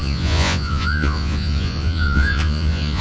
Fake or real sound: fake